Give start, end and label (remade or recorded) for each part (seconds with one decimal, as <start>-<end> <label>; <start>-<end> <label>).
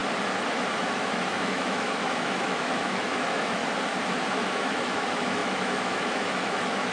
0.0-0.8 recorded; 0.8-3.6 remade; 3.6-4.3 recorded; 4.3-6.9 remade